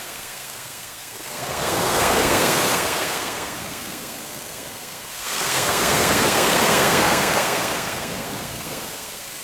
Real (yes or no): no